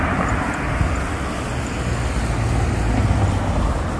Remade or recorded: recorded